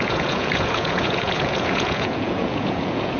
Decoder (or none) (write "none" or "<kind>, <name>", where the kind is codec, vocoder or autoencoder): vocoder, Vocos